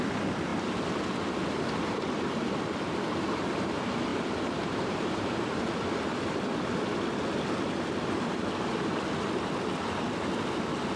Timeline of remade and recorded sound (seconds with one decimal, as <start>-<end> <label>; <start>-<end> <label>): 0.0-4.1 recorded; 4.1-5.7 remade; 5.7-11.0 recorded